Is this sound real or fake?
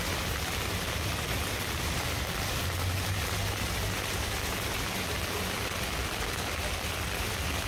real